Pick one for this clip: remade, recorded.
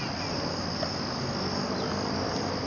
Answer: recorded